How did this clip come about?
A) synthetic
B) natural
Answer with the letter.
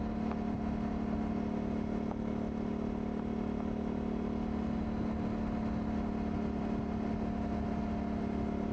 B